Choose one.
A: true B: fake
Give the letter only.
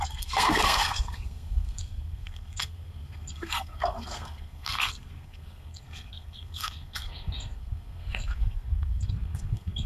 B